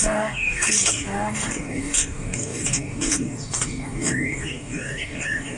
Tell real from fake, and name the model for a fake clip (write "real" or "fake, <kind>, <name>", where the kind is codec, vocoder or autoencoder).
fake, codec, DAC